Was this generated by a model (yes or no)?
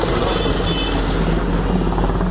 no